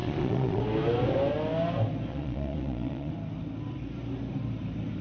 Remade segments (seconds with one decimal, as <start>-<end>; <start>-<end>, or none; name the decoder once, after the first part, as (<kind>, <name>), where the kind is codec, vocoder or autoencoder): 0.0-0.6 (vocoder, Vocos); 2.1-3.1